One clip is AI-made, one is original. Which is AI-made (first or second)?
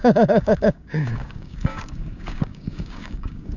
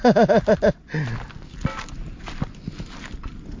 first